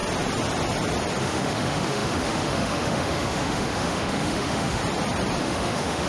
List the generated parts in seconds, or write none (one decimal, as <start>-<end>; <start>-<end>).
1.2-4.8; 5.4-6.1